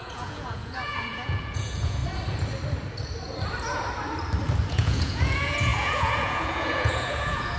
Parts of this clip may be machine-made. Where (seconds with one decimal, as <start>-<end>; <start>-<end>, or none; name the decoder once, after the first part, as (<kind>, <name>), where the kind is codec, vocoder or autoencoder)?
0.0-2.0 (vocoder, Vocos); 4.7-7.6

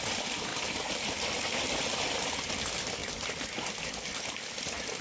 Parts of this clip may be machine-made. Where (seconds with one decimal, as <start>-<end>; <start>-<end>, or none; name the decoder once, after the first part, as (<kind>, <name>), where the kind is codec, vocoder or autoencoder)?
none

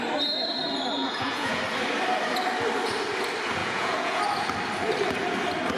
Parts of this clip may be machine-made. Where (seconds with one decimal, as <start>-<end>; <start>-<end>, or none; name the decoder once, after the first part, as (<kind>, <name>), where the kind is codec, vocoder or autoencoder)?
1.0-1.6 (vocoder, Vocos); 3.6-4.2

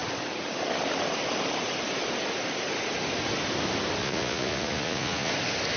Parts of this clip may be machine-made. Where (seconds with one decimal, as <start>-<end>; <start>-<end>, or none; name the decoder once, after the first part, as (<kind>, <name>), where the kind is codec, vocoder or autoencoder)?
4.0-5.3 (vocoder, Vocos)

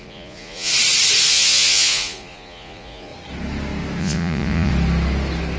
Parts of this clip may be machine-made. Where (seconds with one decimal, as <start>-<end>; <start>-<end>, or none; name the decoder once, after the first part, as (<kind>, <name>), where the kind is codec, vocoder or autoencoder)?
0.0-0.7 (vocoder, Vocos); 1.3-3.1; 4.0-4.7

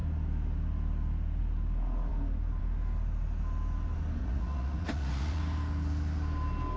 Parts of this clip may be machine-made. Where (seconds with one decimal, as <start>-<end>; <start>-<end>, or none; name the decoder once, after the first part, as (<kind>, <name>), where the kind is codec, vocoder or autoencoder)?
4.2-5.4 (vocoder, Vocos)

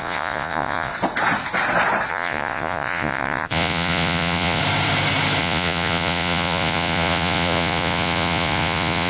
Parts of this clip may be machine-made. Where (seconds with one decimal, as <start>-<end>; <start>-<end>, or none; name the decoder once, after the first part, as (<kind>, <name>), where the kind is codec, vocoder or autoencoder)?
0.0-0.9 (vocoder, Vocos); 2.1-4.6; 5.4-9.1